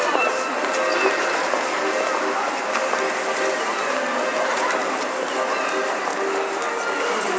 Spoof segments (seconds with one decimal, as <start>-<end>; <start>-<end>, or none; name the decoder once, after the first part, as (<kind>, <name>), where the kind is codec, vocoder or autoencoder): none